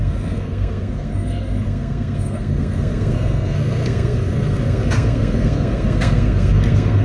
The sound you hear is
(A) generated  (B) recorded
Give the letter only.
A